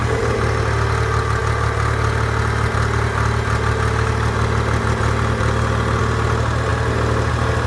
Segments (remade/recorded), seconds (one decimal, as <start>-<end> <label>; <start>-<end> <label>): 0.0-7.7 recorded